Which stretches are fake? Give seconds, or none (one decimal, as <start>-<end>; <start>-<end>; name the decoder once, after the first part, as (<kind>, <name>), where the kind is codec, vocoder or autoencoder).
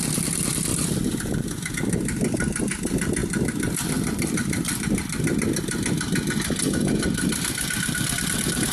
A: 0.0-0.7 (vocoder, BigVGAN v2); 1.7-8.7